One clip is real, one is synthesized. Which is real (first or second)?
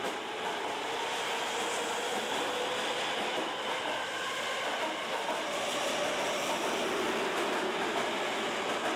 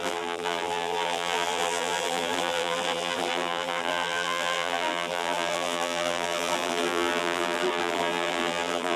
first